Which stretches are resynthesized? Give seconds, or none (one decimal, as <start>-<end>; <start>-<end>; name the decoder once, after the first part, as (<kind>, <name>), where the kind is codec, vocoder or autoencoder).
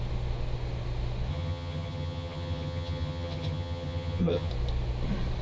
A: 1.3-4.5 (vocoder, HiFi-GAN)